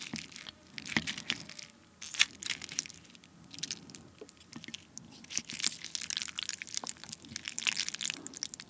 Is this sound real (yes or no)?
yes